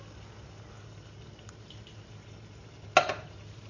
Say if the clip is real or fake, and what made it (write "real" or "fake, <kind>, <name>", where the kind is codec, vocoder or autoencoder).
real